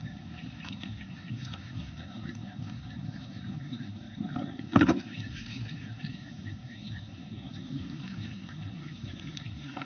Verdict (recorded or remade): remade